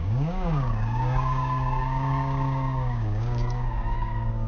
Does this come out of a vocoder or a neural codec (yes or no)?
yes